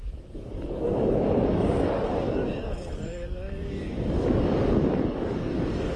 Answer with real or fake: fake